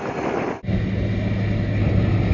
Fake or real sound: real